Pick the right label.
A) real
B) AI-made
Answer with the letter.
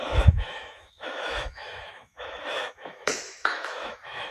B